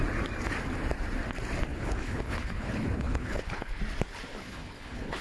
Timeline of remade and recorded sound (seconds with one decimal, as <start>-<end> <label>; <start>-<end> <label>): 0.0-1.7 recorded; 1.7-3.8 remade; 3.8-4.3 recorded; 4.3-5.2 remade